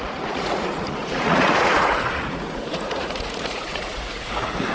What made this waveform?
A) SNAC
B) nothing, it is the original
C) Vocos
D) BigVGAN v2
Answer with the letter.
C